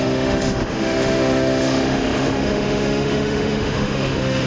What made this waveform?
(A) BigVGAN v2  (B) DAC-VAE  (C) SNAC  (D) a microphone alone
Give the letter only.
B